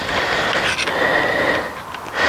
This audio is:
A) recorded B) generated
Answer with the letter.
A